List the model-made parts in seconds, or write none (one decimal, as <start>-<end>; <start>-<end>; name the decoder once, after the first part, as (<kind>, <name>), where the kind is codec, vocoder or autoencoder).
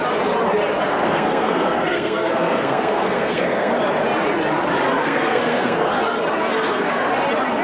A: 0.9-3.7 (codec, SNAC); 5.0-5.9; 6.4-7.0